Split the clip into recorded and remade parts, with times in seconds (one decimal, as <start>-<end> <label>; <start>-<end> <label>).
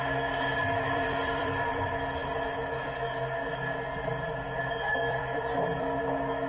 0.0-0.6 recorded; 0.6-1.9 remade; 1.9-5.1 recorded; 5.1-6.0 remade; 6.0-6.5 recorded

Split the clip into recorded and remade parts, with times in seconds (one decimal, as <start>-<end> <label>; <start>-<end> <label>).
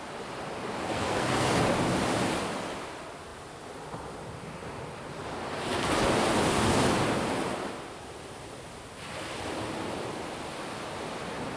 0.0-0.8 recorded; 0.8-1.6 remade; 1.6-11.6 recorded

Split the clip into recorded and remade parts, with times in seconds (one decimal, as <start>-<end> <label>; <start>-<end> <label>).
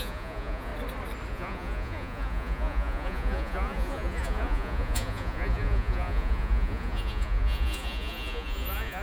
0.0-0.7 remade; 0.7-1.3 recorded; 1.3-9.0 remade